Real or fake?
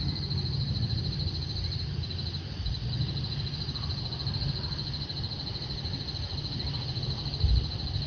real